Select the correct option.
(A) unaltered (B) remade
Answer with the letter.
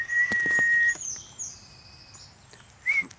A